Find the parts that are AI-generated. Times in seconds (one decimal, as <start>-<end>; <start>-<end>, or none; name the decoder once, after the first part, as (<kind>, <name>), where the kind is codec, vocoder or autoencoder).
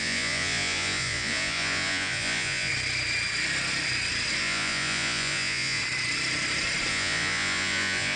0.0-2.7 (vocoder, Vocos); 4.4-5.8; 6.9-8.2